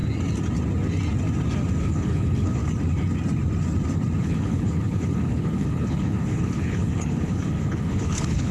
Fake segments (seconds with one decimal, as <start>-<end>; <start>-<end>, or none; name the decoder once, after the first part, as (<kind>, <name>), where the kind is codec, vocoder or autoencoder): 1.8-2.6 (codec, HILCodec); 4.2-8.5